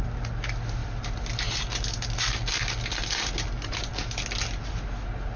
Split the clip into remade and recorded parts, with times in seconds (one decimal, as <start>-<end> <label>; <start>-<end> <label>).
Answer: 0.0-5.4 recorded